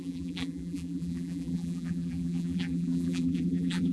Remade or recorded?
remade